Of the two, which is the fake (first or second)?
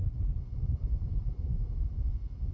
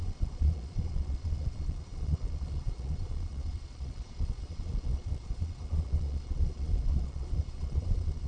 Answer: second